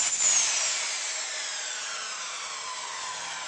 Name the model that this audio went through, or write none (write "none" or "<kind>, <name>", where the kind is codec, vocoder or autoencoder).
none